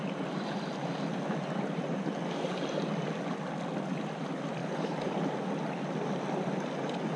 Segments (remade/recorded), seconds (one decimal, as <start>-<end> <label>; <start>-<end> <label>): 0.0-7.2 recorded